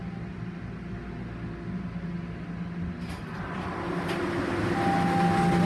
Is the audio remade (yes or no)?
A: no